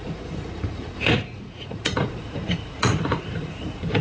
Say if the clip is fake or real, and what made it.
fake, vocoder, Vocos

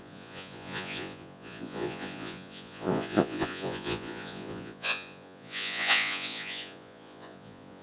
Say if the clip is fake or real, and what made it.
fake, vocoder, Vocos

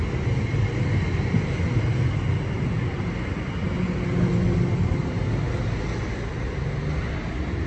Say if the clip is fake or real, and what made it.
real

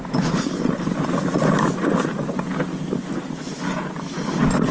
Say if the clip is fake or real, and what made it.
real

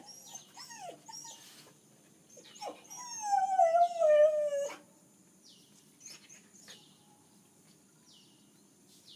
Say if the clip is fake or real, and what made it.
real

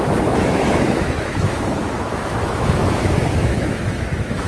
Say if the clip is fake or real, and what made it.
fake, autoencoder, DAC-VAE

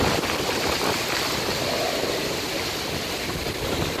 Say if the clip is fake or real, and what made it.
real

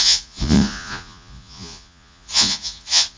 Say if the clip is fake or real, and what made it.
fake, vocoder, Vocos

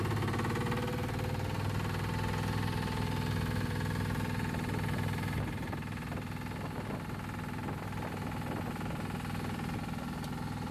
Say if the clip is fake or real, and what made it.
real